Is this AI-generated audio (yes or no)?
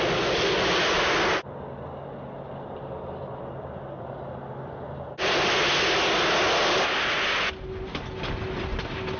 no